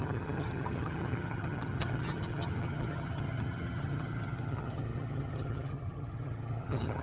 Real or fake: fake